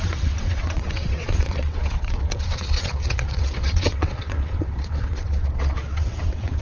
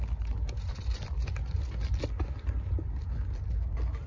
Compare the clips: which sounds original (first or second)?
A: second